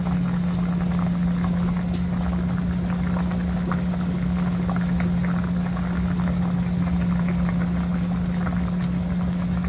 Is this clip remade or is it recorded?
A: recorded